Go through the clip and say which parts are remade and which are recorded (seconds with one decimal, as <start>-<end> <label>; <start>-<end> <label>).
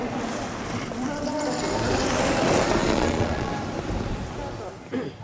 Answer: 0.0-2.8 recorded; 2.8-3.5 remade; 3.5-5.2 recorded